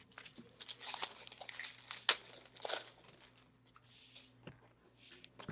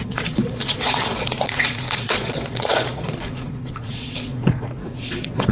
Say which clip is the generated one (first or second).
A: second